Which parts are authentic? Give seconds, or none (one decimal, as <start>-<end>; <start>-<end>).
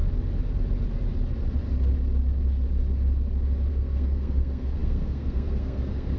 0.0-3.7